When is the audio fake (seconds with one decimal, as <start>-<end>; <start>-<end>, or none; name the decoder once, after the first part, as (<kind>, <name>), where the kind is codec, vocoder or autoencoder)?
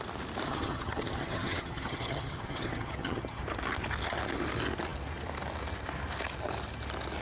0.5-3.4 (vocoder, HiFi-GAN)